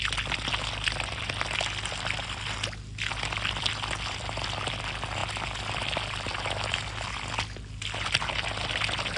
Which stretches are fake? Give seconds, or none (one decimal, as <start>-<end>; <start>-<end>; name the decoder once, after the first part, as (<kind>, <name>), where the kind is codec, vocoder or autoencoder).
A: none